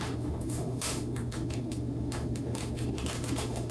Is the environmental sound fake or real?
fake